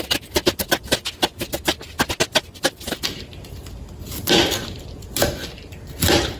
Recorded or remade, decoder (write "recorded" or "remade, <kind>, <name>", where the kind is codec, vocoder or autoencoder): recorded